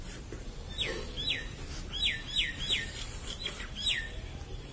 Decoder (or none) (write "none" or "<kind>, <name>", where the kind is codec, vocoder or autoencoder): none